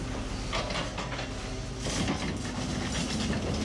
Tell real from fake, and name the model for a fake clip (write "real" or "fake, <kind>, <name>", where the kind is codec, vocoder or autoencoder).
real